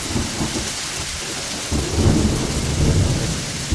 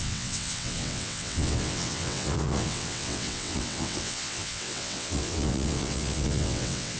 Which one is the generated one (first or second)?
second